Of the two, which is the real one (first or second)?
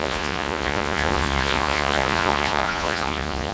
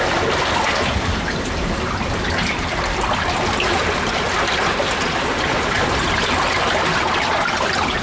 second